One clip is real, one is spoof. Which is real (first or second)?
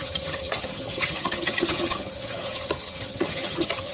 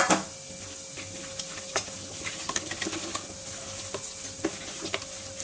second